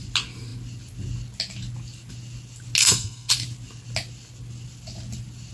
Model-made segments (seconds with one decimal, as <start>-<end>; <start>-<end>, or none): 2.8-3.3